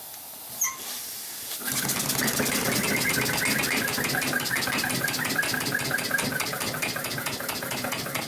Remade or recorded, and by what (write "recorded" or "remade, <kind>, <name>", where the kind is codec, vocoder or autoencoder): recorded